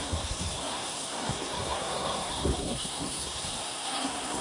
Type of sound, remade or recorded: remade